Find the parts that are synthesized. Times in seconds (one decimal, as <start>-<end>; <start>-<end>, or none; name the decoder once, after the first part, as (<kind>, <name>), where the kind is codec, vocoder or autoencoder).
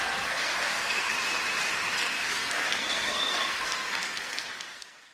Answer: 0.0-1.1 (codec, SNAC); 1.7-5.1